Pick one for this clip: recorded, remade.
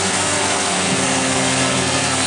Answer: remade